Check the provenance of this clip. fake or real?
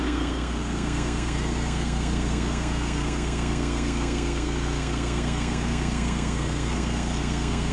fake